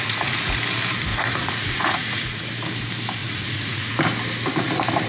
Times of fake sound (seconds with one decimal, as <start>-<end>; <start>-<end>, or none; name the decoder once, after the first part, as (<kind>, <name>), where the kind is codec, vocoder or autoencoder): 0.0-0.6 (vocoder, Vocos); 1.1-2.5; 3.2-3.9